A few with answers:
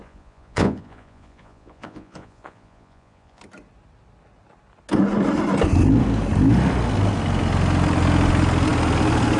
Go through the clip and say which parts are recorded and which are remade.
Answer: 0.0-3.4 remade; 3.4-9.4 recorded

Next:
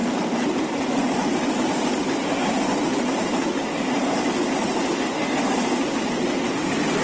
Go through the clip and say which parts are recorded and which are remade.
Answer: 0.0-7.0 recorded

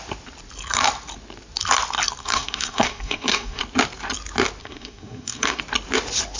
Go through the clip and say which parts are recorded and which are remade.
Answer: 0.0-2.2 recorded; 2.2-3.6 remade; 3.6-4.6 recorded; 4.6-5.6 remade; 5.6-6.4 recorded

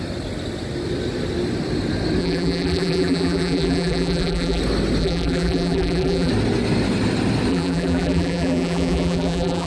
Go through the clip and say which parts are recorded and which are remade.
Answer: 0.0-2.2 recorded; 2.2-4.6 remade; 4.6-5.0 recorded; 5.0-6.3 remade; 6.3-7.5 recorded; 7.5-9.7 remade

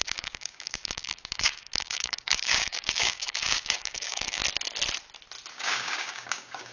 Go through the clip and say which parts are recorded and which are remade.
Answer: 0.0-4.4 remade; 4.4-5.5 recorded; 5.5-6.7 remade

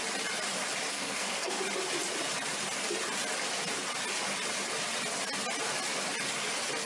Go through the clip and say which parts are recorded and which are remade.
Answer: 0.0-0.9 recorded; 0.9-1.6 remade; 1.6-6.9 recorded

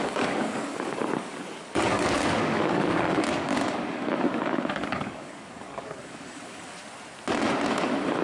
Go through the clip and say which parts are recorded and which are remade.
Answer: 0.0-6.8 remade; 6.8-7.7 recorded; 7.7-8.2 remade